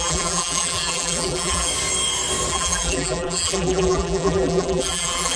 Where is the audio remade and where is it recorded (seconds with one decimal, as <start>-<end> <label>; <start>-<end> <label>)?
0.0-1.7 remade; 1.7-2.5 recorded; 2.5-5.4 remade